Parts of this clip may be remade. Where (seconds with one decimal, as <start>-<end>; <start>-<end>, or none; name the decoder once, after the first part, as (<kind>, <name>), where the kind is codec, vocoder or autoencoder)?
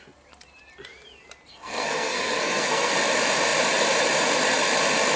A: 1.5-2.9 (codec, SNAC)